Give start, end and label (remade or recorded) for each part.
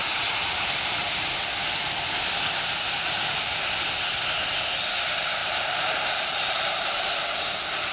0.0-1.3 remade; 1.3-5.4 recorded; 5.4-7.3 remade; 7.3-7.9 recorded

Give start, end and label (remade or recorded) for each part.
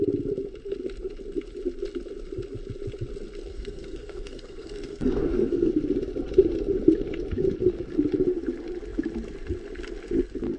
0.0-3.5 recorded; 3.5-5.7 remade; 5.7-10.6 recorded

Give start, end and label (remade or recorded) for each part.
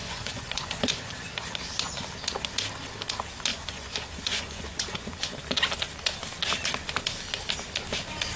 0.0-1.3 remade; 1.3-3.5 recorded; 3.5-5.3 remade; 5.3-8.4 recorded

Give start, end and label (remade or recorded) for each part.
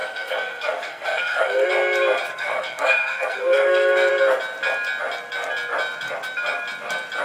0.0-1.7 remade; 1.7-2.3 recorded; 2.3-4.1 remade; 4.1-7.2 recorded